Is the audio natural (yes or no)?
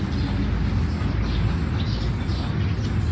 yes